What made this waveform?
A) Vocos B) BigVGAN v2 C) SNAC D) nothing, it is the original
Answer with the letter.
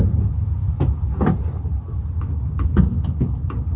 D